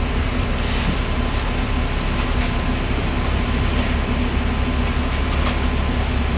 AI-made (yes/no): no